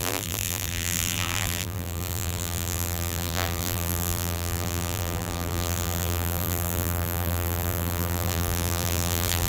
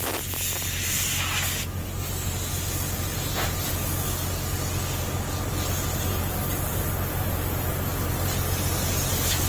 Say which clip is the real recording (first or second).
second